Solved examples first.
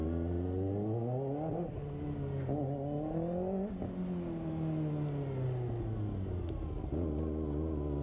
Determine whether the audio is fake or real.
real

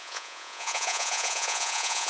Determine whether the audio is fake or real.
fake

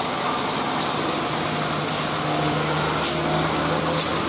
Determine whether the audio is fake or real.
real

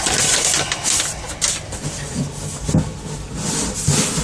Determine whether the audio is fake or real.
real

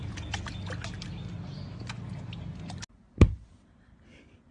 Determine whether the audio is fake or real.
real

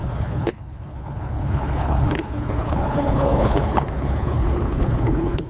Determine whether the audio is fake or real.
fake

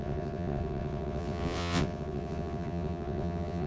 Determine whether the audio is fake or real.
fake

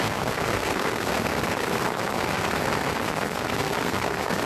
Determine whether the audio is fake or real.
fake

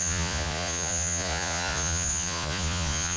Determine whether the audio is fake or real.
fake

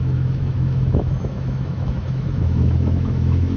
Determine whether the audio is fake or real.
fake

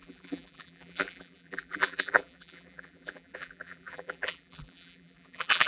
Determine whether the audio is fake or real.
fake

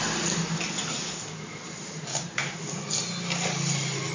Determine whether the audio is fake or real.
real